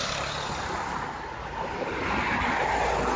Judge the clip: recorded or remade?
recorded